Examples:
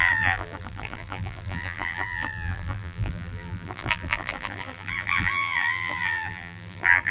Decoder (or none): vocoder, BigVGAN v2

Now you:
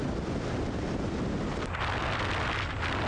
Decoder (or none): none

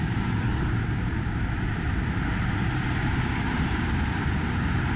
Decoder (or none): vocoder, BigVGAN v2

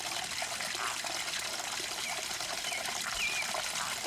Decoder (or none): none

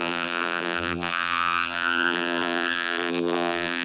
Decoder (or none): vocoder, BigVGAN v2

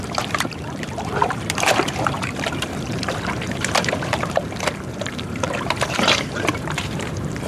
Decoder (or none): vocoder, BigVGAN v2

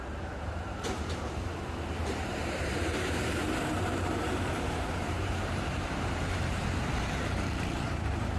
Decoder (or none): vocoder, BigVGAN v2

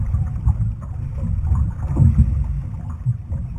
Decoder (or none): none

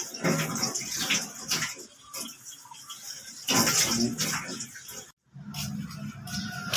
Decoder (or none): none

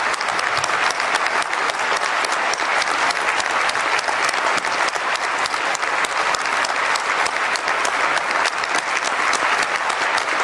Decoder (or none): none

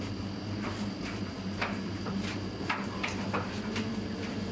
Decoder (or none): vocoder, BigVGAN v2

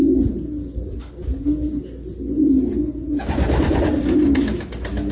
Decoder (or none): none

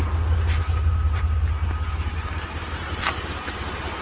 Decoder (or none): none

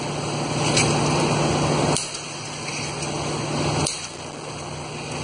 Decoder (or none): none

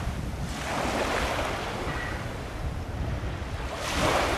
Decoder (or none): none